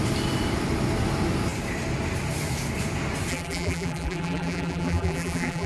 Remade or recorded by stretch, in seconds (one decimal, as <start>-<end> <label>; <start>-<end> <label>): 0.0-3.3 recorded; 3.3-5.7 remade